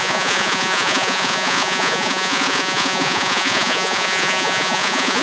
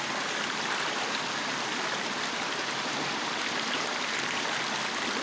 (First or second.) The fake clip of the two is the first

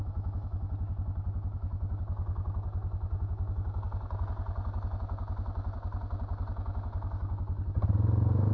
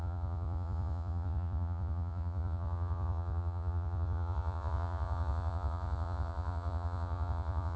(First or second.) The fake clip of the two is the second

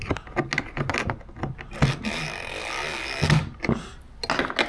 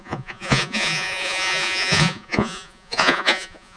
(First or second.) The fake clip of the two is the second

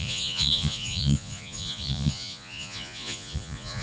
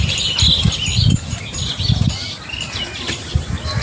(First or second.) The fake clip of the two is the first